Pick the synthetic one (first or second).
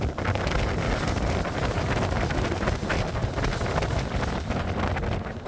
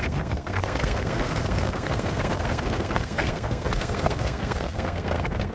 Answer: second